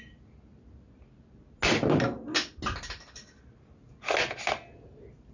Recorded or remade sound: recorded